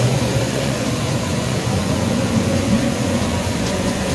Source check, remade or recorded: remade